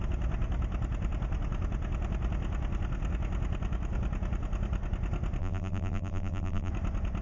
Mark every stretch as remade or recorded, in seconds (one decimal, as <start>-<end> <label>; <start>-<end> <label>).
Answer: 0.0-5.4 recorded; 5.4-6.7 remade; 6.7-7.2 recorded